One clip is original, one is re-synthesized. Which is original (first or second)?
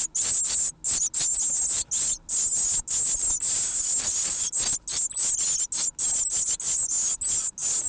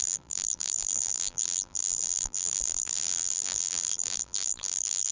first